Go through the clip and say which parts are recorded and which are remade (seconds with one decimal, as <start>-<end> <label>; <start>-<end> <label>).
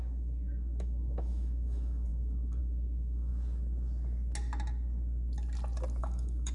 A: 0.0-3.3 remade; 3.3-6.0 recorded; 6.0-6.5 remade